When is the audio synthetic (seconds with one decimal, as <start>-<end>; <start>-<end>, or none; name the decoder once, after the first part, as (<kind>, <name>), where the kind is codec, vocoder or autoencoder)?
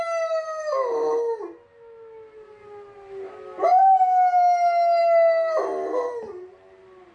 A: none